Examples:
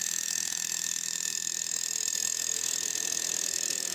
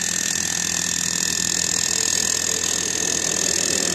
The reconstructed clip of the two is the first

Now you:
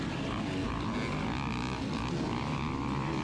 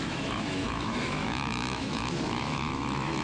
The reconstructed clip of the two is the second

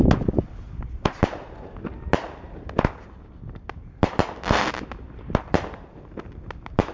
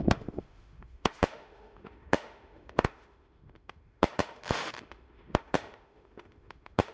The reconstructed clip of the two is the second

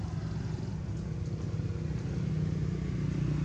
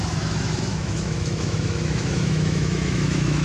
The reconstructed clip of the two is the second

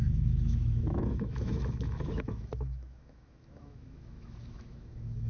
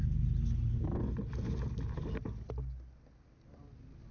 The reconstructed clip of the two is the first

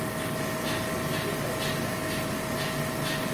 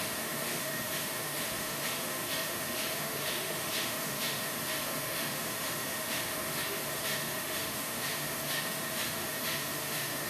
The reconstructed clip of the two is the second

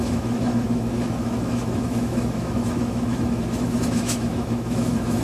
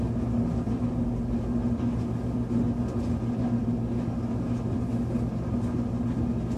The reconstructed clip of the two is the first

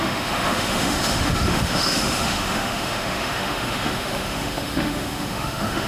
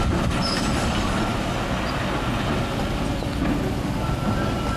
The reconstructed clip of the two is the first